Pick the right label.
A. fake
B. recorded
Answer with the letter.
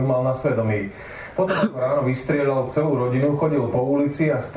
B